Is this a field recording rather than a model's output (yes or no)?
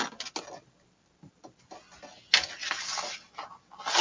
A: yes